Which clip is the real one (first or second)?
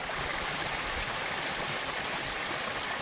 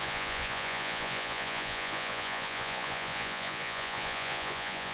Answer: first